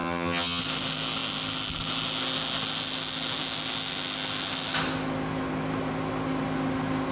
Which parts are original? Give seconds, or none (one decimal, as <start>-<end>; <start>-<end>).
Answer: 0.6-7.1